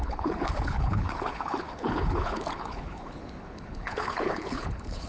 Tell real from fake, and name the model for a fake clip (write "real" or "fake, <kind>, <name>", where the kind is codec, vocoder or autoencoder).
fake, codec, HILCodec